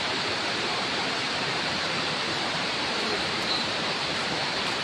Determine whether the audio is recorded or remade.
remade